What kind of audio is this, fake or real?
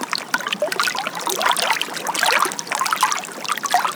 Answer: real